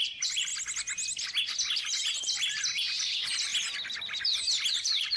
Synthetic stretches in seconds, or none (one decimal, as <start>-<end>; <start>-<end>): 0.0-0.5; 1.7-3.5; 4.7-5.2